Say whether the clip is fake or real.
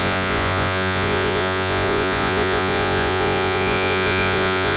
fake